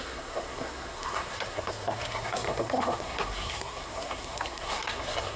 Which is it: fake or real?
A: fake